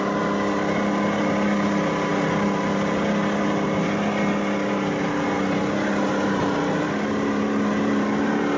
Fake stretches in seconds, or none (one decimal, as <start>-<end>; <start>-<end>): none